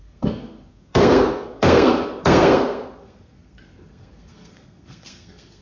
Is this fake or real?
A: fake